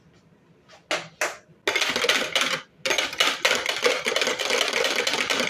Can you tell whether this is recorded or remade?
recorded